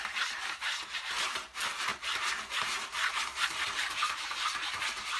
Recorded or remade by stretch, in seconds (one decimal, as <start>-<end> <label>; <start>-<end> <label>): 0.0-5.2 remade